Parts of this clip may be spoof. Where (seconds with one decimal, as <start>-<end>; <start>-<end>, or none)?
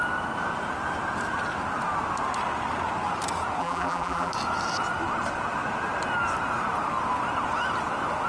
3.6-4.3